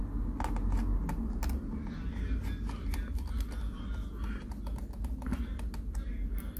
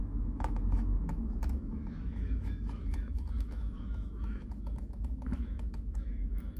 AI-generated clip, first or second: second